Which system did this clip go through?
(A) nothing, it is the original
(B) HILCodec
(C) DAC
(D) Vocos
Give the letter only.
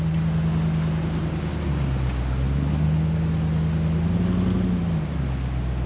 A